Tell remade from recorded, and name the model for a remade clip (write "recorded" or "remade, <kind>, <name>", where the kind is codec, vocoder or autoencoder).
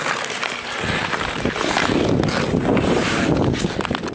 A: recorded